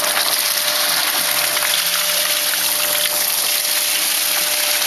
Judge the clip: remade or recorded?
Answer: recorded